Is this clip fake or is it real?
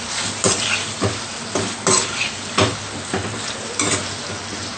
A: real